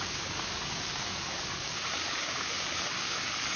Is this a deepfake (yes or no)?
yes